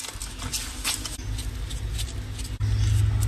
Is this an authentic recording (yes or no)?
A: yes